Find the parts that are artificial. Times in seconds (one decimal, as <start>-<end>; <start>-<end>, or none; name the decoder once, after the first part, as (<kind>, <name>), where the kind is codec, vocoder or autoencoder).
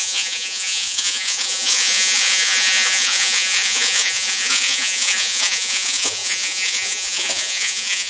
0.0-8.1 (vocoder, Vocos)